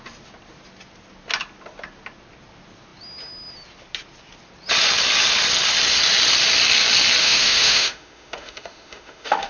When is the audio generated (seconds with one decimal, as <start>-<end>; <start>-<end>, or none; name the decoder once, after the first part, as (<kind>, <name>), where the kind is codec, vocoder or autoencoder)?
7.2-9.5 (autoencoder, DAC-VAE)